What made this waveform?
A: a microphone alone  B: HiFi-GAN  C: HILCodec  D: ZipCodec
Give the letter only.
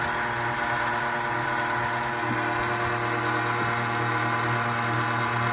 A